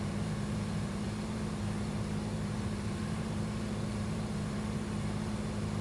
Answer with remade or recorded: remade